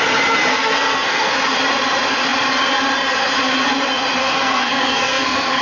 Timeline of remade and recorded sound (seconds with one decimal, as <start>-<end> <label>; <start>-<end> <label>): 0.0-0.5 recorded; 0.5-1.3 remade; 1.3-4.2 recorded; 4.2-5.6 remade